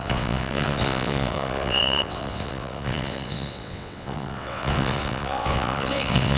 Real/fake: fake